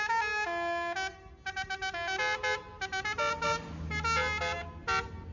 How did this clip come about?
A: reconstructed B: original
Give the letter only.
B